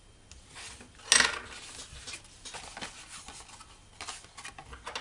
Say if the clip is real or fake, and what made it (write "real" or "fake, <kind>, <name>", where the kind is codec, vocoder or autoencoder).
real